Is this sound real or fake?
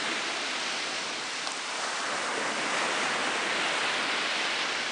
real